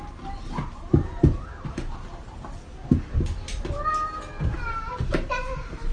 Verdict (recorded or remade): recorded